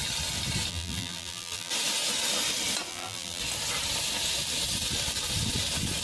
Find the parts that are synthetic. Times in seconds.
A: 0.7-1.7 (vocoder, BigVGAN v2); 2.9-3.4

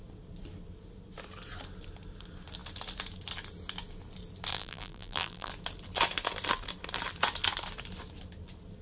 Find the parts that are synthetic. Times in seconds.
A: 4.5-5.5 (vocoder, BigVGAN v2)

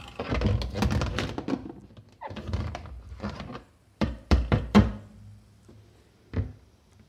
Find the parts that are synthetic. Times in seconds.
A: 1.1-4.9 (vocoder, BigVGAN v2)